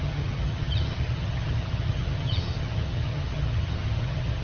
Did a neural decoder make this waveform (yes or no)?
yes